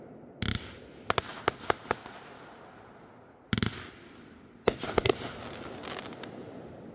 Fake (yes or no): no